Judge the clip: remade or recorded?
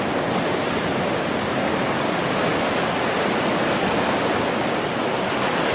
recorded